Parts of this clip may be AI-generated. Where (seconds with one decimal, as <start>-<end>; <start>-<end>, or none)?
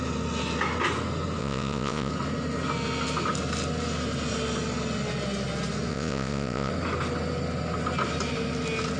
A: 1.4-2.1; 5.9-6.7